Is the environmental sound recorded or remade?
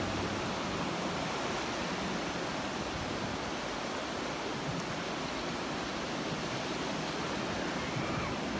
recorded